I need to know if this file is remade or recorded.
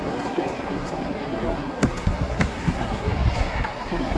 remade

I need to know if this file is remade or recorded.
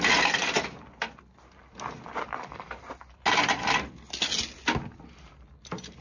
recorded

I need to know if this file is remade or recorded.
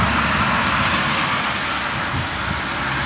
recorded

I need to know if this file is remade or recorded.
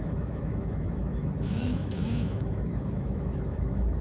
remade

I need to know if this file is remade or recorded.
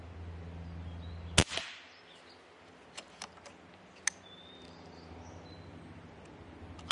recorded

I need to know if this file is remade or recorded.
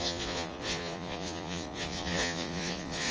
remade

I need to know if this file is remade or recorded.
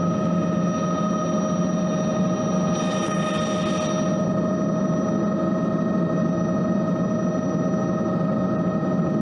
recorded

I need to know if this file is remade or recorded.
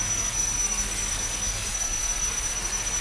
remade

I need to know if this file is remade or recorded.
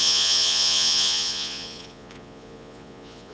remade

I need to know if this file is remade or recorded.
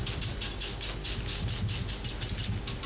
recorded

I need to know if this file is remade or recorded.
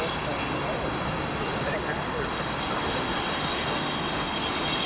recorded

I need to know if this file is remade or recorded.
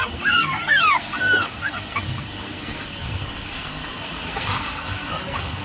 remade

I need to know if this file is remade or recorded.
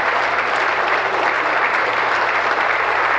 remade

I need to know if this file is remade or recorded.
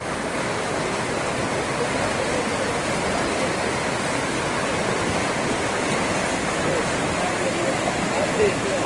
recorded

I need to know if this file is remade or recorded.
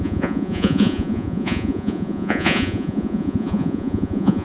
remade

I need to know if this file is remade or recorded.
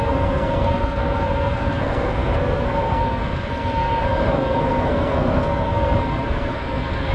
remade